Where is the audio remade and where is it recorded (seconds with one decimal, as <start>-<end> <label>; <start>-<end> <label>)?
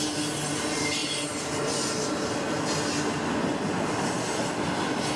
0.0-5.2 recorded